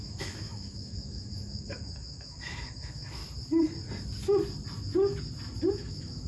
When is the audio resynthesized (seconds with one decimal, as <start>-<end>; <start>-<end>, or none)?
0.0-3.2; 5.7-6.3

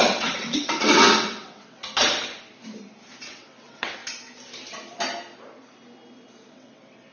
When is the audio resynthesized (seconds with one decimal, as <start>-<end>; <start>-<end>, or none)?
0.0-1.8; 3.2-4.0; 6.5-7.1

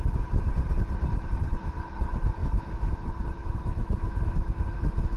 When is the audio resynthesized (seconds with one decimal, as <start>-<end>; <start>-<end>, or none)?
2.4-2.9; 3.4-5.2

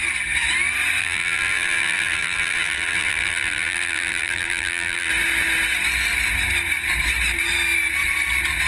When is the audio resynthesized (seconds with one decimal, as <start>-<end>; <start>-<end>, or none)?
1.0-5.1

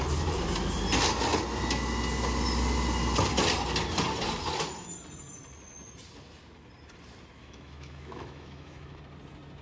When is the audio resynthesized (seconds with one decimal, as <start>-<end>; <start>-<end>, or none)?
7.4-9.0

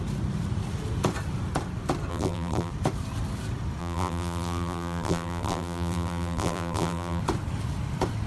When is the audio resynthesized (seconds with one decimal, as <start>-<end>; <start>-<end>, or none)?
2.1-2.7; 3.8-7.2